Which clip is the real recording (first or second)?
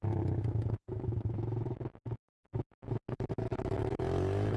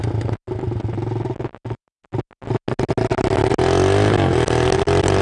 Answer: second